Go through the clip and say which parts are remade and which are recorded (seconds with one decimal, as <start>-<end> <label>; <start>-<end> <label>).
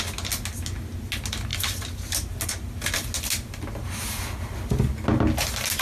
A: 0.0-5.8 recorded